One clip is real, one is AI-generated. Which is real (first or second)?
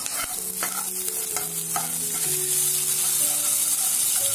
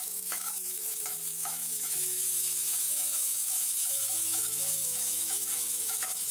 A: first